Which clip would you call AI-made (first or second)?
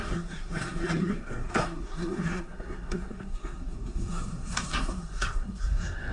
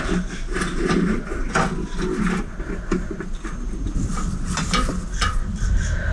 first